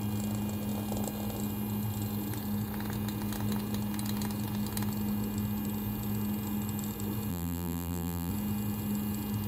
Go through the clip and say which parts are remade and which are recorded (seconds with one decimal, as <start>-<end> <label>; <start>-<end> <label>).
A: 0.0-7.3 recorded; 7.3-8.3 remade; 8.3-9.5 recorded